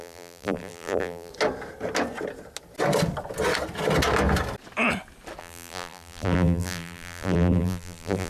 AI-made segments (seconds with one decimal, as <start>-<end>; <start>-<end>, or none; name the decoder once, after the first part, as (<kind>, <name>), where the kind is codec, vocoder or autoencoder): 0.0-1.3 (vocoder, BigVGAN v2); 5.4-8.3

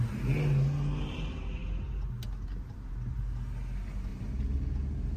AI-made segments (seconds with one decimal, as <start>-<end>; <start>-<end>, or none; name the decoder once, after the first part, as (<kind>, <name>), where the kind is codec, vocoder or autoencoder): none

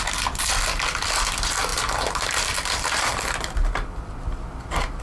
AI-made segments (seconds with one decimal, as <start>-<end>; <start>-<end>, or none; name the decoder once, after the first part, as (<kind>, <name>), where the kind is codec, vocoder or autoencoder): none

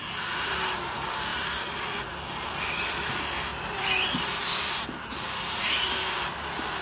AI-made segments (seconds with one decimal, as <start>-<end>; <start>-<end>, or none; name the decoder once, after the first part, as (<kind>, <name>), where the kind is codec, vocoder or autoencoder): 1.3-2.0 (vocoder, BigVGAN v2); 3.5-5.6